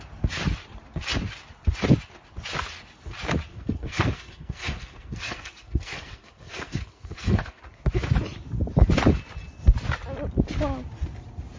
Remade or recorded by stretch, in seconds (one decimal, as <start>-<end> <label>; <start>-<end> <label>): 0.0-3.5 recorded; 3.5-7.6 remade; 7.6-11.6 recorded